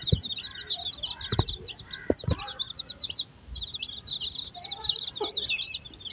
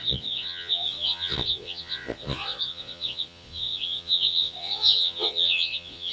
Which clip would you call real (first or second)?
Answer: first